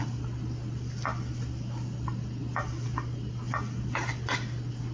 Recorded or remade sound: recorded